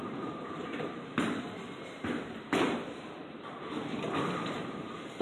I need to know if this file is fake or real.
real